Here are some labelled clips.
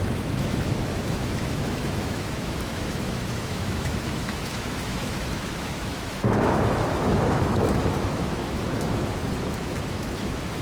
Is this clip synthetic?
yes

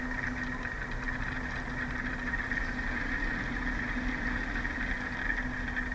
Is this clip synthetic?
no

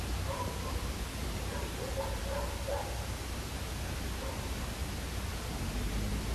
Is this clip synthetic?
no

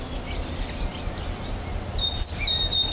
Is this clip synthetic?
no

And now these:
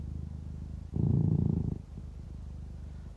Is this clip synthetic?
no